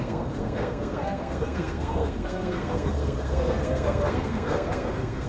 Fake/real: fake